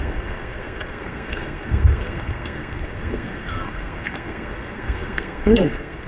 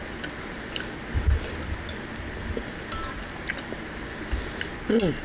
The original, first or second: second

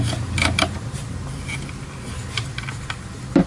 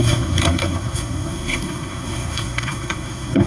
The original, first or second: first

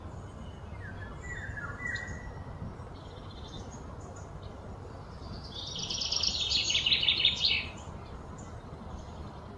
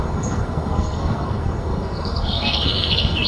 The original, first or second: first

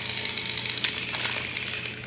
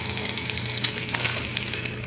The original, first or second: first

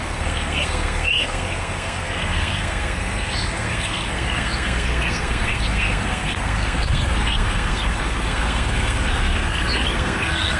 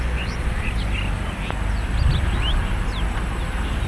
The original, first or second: second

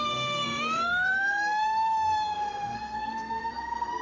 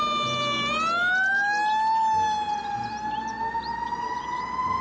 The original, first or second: second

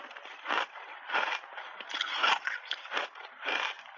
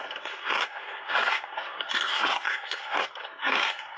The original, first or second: first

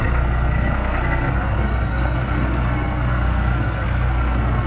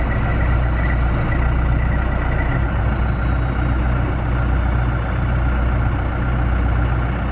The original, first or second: second